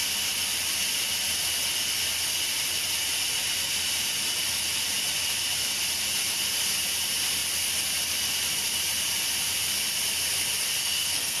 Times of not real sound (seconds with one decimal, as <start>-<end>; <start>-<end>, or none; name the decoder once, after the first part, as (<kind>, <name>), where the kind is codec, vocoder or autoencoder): 10.8-11.4 (codec, SNAC)